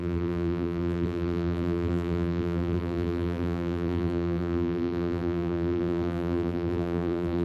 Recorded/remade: remade